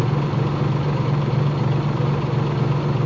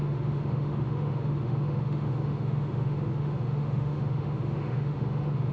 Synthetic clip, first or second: second